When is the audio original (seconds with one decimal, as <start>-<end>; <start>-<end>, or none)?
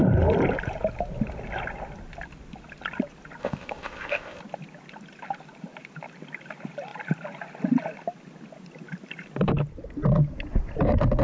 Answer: 0.0-3.4; 4.4-11.2